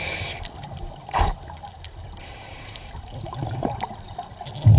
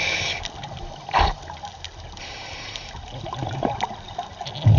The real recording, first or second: second